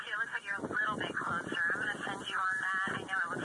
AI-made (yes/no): no